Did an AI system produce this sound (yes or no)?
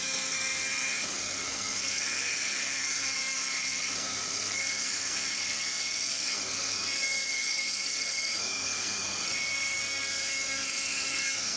yes